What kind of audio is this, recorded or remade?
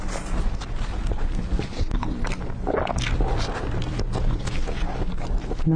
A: recorded